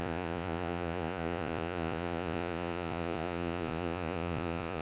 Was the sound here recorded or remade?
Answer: remade